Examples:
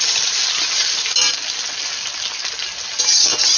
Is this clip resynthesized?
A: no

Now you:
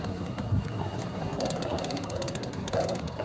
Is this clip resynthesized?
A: yes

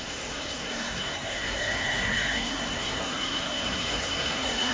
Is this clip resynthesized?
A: yes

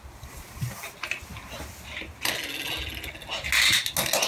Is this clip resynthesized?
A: no